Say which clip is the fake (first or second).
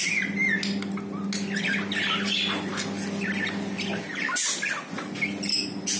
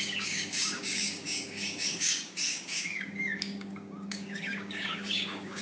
second